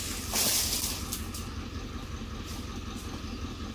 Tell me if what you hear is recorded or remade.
recorded